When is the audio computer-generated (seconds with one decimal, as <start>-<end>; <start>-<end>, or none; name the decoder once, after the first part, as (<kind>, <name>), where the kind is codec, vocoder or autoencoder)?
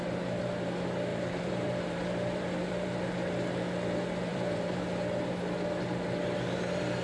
1.1-3.0 (vocoder, BigVGAN v2); 4.3-4.8